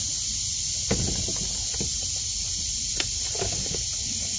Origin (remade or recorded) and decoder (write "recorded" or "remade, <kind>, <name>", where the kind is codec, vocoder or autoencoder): recorded